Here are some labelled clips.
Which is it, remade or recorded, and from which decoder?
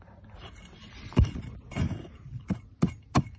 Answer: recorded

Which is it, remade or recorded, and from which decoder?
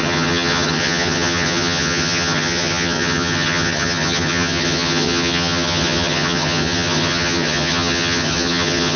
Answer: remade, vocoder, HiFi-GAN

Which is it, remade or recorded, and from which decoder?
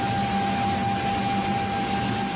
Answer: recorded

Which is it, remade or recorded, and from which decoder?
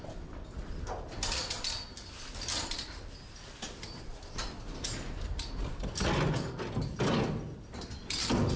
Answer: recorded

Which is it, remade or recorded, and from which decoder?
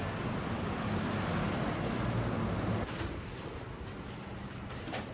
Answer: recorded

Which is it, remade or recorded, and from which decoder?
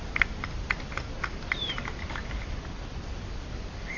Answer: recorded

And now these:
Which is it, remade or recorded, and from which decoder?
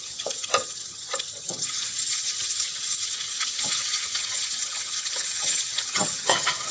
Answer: remade, vocoder, HiFi-GAN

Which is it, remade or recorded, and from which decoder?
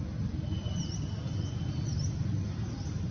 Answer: recorded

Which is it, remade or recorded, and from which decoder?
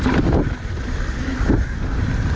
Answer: recorded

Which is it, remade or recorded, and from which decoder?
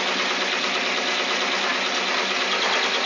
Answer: recorded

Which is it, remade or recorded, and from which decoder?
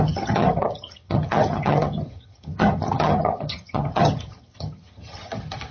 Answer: remade, vocoder, HiFi-GAN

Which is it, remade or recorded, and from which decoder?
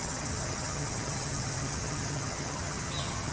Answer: remade, vocoder, HiFi-GAN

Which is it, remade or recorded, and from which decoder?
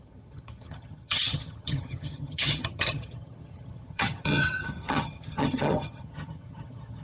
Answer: remade, vocoder, HiFi-GAN